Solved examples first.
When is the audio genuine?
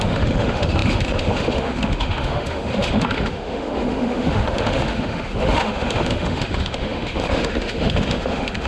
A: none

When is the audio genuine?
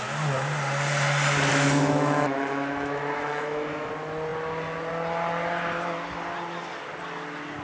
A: 0.0-1.5; 3.9-7.6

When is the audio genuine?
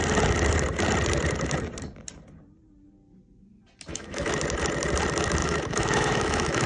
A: 0.0-3.9; 4.4-5.4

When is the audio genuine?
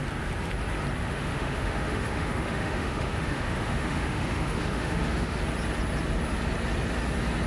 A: 0.0-1.0; 5.4-7.5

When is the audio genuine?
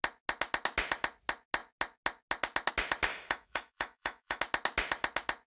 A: 0.0-3.1; 4.4-5.5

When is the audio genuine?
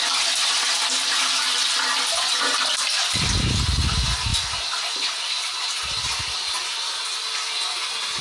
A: 0.0-8.2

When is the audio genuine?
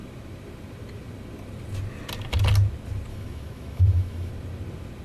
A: 0.0-3.1; 4.3-5.0